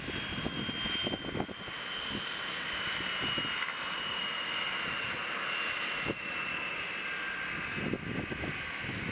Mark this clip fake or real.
real